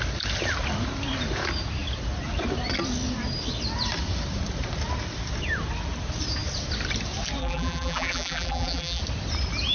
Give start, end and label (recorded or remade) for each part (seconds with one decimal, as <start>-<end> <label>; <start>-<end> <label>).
0.0-7.4 recorded; 7.4-9.0 remade; 9.0-9.7 recorded